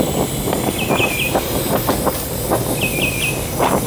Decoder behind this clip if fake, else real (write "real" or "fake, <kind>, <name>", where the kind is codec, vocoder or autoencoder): real